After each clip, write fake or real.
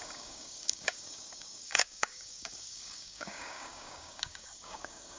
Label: fake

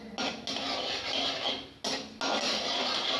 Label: real